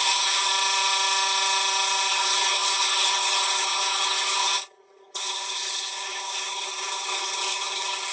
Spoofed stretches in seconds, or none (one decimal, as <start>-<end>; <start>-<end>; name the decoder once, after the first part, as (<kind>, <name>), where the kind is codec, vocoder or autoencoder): 0.0-0.5 (codec, HILCodec); 2.1-8.1